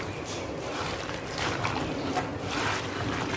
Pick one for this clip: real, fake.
real